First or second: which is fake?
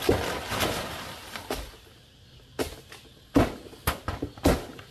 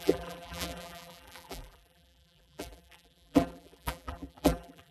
second